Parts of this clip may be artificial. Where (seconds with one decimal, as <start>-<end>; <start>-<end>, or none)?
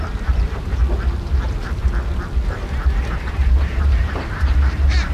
0.0-0.8; 2.5-5.1